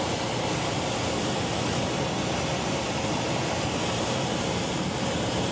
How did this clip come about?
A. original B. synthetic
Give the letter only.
A